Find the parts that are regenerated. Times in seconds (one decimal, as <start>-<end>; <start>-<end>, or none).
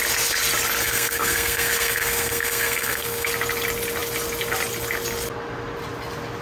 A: 0.8-3.3